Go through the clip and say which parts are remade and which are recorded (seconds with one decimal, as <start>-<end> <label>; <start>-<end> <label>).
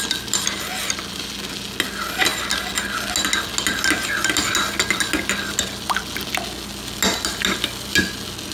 0.0-8.5 recorded